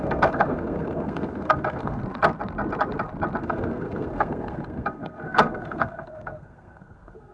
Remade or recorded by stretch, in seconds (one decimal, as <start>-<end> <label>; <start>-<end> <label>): 0.0-2.0 remade; 2.0-3.4 recorded; 3.4-7.3 remade